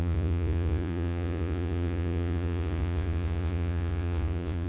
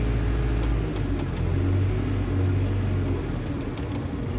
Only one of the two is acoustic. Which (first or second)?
second